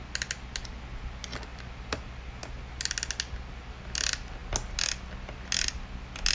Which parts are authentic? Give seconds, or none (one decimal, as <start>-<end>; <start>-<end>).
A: 0.0-6.3